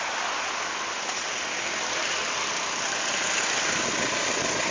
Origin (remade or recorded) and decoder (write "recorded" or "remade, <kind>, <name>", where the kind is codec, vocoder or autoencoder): recorded